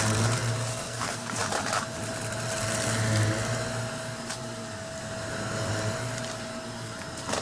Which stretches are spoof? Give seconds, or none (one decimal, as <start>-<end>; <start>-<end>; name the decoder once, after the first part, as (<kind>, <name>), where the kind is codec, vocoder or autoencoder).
0.7-1.4 (codec, SNAC)